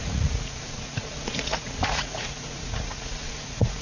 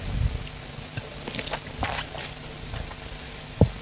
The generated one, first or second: first